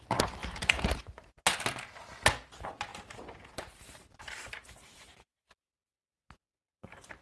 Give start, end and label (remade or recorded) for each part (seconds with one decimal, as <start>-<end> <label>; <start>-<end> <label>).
0.0-0.4 recorded; 0.4-1.3 remade; 1.3-2.9 recorded; 2.9-5.6 remade; 5.6-7.2 recorded